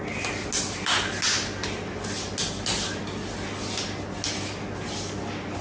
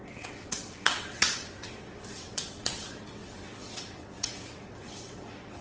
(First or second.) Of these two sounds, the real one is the first